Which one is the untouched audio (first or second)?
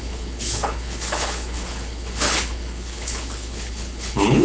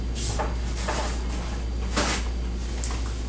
second